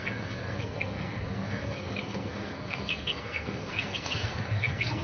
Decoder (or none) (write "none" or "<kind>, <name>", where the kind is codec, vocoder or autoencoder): codec, SNAC